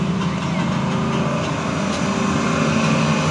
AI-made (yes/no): no